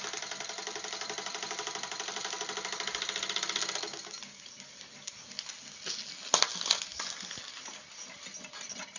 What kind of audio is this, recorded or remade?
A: recorded